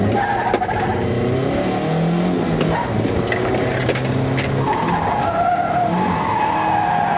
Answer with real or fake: real